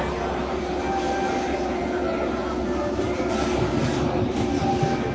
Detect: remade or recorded recorded